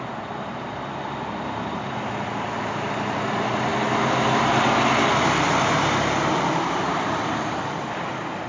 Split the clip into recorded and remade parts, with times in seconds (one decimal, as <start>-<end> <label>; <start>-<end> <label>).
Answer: 0.0-8.5 recorded